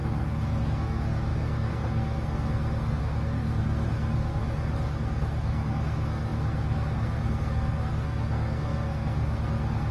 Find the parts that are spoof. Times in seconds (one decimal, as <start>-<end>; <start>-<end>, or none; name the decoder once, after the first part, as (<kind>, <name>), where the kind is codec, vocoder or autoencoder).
0.0-4.4 (codec, SNAC); 4.9-9.9